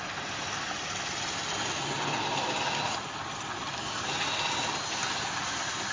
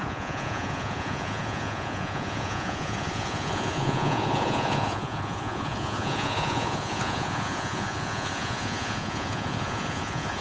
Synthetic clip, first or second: second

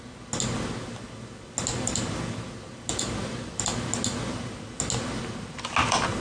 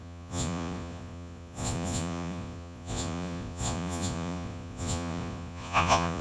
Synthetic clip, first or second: second